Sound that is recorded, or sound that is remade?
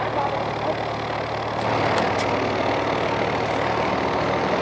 recorded